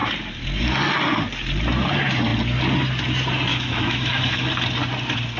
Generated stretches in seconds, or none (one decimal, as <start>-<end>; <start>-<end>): 3.5-4.5